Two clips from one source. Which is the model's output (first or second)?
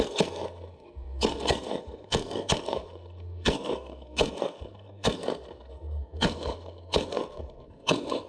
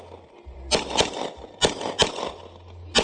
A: first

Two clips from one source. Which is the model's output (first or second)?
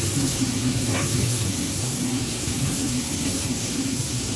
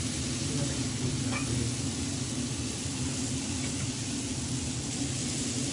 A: first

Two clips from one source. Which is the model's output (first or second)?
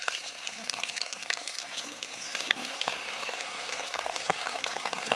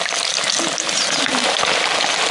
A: first